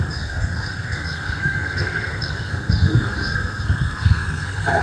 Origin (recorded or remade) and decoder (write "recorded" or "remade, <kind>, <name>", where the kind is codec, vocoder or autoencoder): remade, codec, SNAC